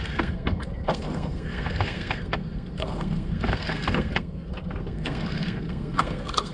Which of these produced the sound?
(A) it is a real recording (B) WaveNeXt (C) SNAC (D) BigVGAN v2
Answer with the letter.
C